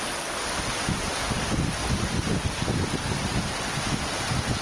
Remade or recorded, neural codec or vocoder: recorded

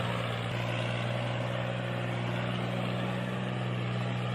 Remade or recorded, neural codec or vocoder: recorded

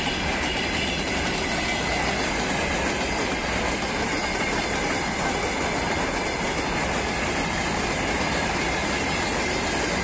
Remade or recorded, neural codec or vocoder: recorded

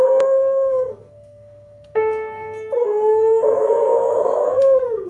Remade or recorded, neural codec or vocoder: remade, codec, SNAC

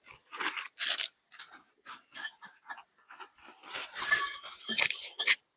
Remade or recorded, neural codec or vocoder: recorded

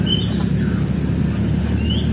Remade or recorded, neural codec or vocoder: recorded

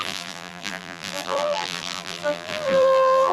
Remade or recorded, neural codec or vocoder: remade, vocoder, BigVGAN v2